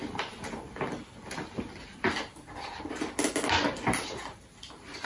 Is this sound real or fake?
real